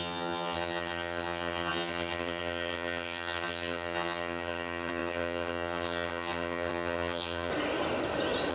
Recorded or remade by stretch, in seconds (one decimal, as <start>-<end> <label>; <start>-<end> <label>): 0.0-7.5 remade; 7.5-8.5 recorded